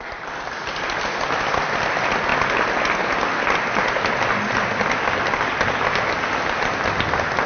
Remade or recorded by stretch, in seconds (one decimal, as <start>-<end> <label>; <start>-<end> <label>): 0.0-7.5 recorded